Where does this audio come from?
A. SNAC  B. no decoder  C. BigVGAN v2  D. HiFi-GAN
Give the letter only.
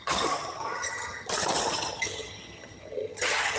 D